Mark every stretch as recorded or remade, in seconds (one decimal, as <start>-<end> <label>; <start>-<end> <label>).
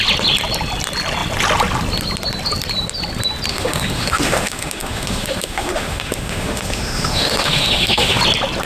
0.0-3.5 recorded; 3.5-8.2 remade; 8.2-8.7 recorded